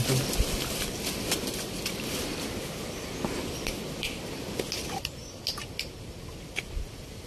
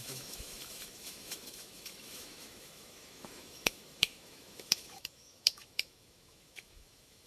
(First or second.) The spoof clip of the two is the second